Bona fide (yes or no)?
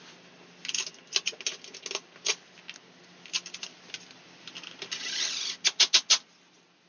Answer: yes